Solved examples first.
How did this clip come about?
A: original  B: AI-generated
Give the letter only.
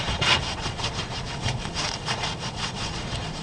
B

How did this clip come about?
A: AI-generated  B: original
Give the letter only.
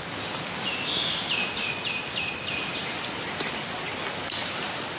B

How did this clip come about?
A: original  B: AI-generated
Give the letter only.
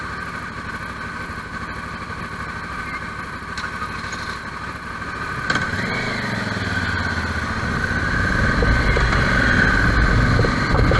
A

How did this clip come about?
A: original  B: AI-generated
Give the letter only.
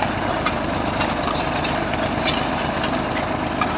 A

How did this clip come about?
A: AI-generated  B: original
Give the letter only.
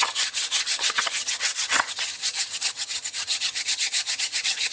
A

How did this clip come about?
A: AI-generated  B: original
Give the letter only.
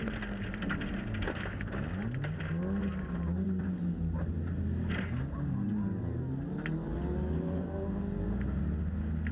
B